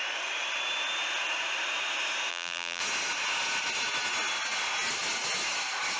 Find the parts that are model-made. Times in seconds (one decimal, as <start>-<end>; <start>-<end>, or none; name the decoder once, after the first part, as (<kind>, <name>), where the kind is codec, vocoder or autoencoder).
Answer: 2.3-2.8 (vocoder, BigVGAN v2)